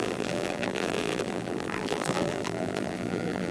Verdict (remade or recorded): remade